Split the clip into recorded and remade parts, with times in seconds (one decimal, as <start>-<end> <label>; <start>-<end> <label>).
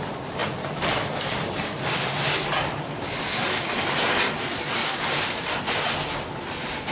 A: 0.0-6.9 recorded